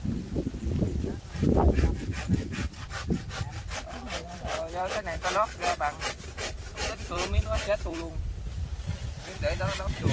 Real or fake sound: fake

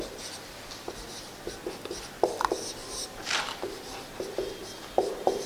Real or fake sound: real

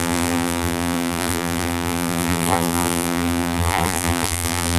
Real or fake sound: fake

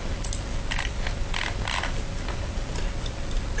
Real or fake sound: real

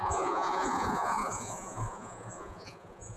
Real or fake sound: fake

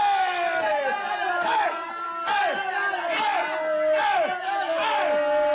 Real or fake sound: real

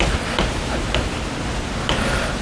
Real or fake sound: real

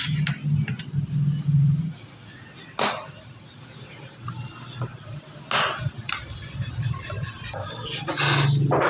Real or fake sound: real